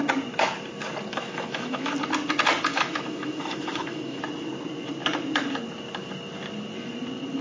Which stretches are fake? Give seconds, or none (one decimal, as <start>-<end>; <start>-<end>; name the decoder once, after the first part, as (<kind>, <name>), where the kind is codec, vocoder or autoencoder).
1.1-1.9 (autoencoder, DAC-VAE); 2.7-4.2

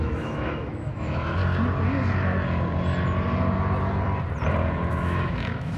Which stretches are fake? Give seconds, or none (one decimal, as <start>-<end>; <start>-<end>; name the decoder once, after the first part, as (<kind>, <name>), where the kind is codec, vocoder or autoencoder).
0.0-1.4 (autoencoder, DAC-VAE); 4.9-5.8